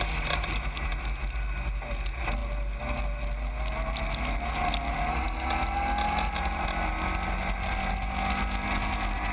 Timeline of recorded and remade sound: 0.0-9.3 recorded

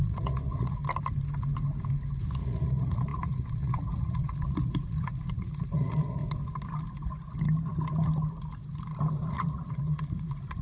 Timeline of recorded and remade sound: 0.0-0.8 remade; 0.8-2.2 recorded; 2.2-6.2 remade; 6.2-9.3 recorded; 9.3-10.6 remade